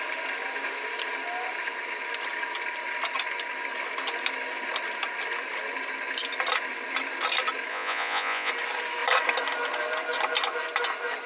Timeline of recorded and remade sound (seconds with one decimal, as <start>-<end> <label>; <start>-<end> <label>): 0.0-7.7 recorded; 7.7-8.5 remade; 8.5-11.3 recorded